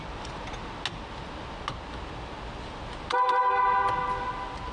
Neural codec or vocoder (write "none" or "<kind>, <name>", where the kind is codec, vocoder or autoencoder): none